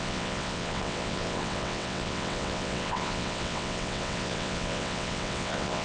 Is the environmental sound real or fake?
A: fake